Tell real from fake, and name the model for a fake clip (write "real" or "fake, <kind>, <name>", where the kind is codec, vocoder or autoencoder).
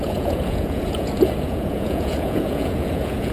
fake, vocoder, Vocos